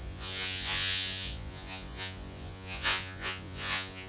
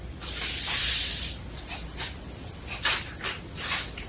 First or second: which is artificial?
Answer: first